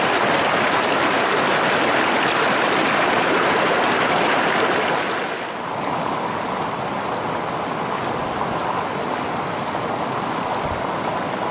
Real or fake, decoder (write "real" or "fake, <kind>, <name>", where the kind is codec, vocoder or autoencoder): real